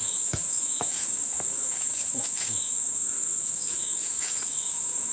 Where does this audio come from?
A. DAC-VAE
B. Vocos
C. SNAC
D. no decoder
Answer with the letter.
A